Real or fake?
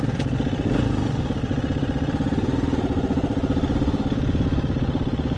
fake